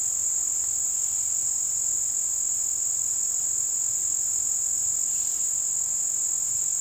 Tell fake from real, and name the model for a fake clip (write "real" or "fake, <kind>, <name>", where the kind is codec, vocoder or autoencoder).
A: real